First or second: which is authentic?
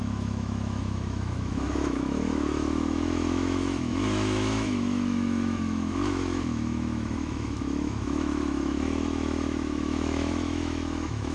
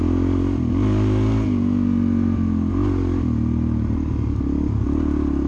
second